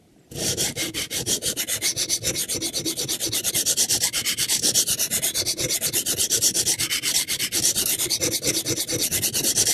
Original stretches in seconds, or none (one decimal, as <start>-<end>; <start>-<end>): 1.6-9.7

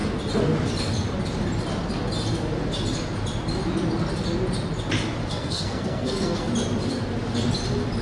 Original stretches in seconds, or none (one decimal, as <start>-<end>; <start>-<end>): 0.0-5.3; 6.5-8.0

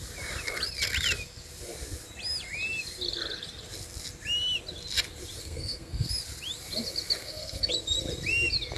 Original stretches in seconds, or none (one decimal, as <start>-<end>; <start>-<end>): 0.0-5.4; 6.1-7.2; 7.7-8.8

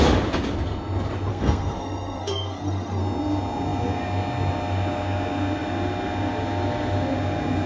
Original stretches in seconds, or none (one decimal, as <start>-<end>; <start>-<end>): 0.0-1.3; 3.0-7.7

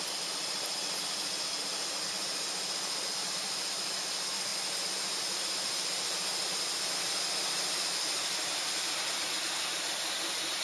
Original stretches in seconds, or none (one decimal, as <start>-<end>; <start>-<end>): 0.0-10.6

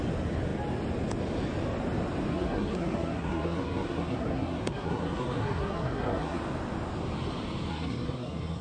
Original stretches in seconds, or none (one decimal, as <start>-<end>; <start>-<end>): 0.0-2.3; 6.4-7.7